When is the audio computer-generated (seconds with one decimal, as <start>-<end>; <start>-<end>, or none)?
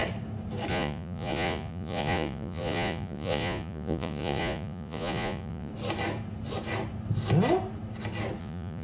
0.7-5.7; 8.4-8.8